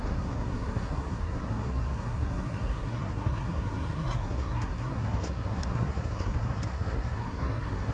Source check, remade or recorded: remade